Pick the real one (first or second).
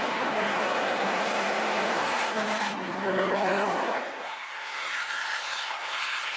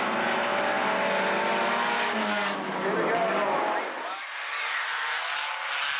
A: second